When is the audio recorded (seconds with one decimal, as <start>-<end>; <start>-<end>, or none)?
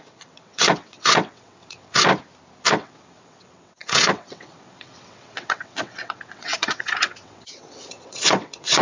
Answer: 2.1-2.7